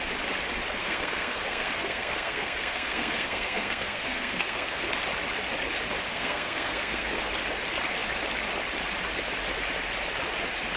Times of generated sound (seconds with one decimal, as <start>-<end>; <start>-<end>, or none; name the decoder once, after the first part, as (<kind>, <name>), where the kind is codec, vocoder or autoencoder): 0.8-4.8 (codec, SNAC); 6.1-7.3